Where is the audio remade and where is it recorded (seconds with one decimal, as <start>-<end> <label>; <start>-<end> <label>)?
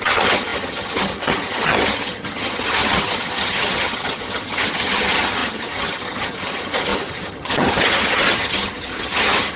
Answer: 0.0-9.6 remade